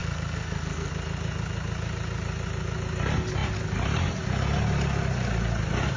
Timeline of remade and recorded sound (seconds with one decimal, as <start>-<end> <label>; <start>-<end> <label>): 0.0-0.9 remade; 0.9-6.0 recorded